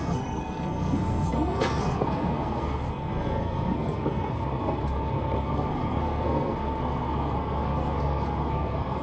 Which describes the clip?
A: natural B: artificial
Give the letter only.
B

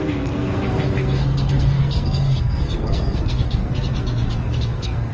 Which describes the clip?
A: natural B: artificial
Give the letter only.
B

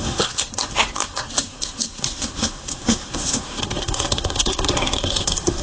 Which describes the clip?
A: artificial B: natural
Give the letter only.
A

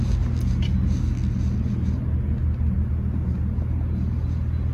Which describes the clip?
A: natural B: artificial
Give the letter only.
A